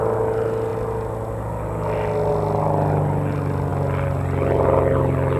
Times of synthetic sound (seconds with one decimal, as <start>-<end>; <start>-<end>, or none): none